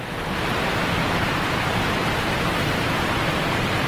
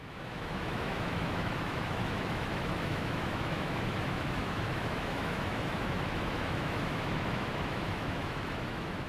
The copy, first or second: second